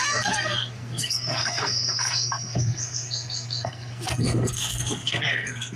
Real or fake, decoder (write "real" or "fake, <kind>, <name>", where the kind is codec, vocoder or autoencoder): fake, codec, SNAC